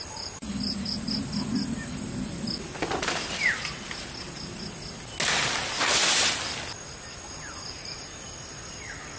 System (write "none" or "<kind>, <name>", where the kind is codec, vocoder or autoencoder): none